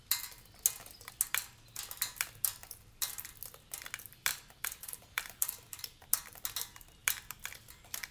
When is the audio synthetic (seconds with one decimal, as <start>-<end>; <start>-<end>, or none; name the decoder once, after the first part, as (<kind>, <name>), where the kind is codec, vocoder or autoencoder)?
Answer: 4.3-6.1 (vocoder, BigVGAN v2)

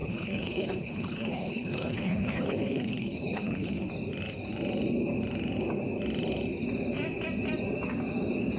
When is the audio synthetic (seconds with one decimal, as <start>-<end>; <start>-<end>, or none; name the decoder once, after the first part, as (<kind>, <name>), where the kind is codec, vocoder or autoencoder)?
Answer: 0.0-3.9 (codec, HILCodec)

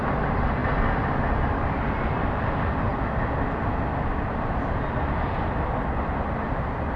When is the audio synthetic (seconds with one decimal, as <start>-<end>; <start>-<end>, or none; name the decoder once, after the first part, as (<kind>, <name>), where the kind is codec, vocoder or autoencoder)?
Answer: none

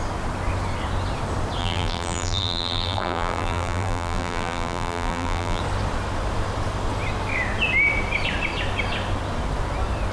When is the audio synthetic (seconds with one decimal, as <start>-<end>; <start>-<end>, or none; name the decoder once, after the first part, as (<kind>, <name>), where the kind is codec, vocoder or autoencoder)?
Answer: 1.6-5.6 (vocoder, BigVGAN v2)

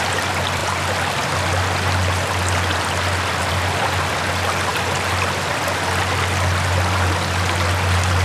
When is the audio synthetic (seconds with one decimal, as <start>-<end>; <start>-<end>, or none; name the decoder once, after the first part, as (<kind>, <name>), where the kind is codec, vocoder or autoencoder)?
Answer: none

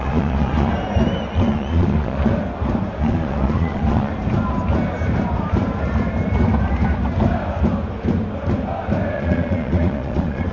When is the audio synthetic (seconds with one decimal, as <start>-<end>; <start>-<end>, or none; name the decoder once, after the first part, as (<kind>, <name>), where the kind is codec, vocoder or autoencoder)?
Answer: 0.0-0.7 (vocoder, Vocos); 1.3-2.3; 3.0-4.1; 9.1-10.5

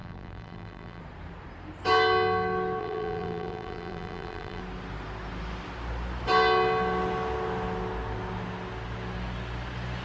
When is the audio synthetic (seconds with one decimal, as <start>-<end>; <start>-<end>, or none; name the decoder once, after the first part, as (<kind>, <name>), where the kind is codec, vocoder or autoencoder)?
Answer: 0.0-1.0 (vocoder, BigVGAN v2); 2.8-4.6